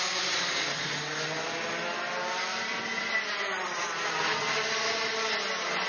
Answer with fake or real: real